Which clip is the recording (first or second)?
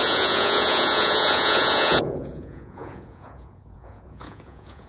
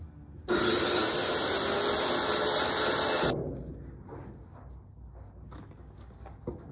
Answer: second